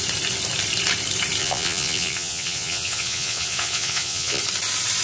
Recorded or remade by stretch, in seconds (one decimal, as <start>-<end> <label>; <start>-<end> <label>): 0.0-1.4 recorded; 1.4-4.4 remade; 4.4-5.0 recorded